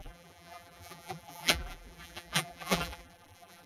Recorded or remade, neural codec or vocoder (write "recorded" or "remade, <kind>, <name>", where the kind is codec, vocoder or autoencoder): remade, vocoder, BigVGAN v2